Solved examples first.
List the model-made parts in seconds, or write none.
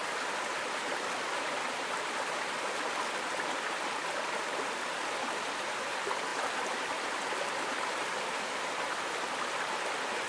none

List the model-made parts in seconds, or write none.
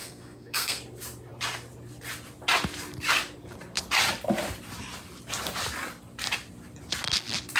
0.0-0.8 (codec, SNAC)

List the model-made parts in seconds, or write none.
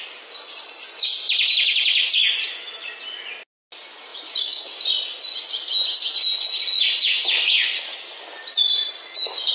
none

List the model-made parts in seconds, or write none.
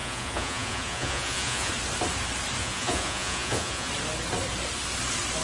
0.0-1.7 (vocoder, Vocos); 2.6-3.9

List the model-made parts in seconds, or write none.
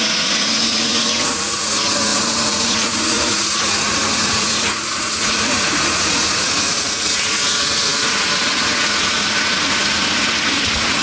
0.0-11.0 (vocoder, Vocos)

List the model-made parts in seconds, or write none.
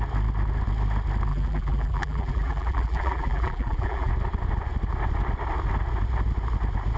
1.3-4.1 (vocoder, BigVGAN v2)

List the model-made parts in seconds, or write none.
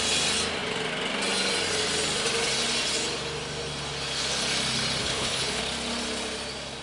5.0-5.6 (codec, HILCodec)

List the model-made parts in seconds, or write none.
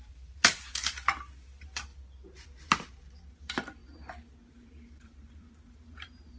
0.0-1.9 (vocoder, BigVGAN v2); 3.3-3.8; 4.5-6.4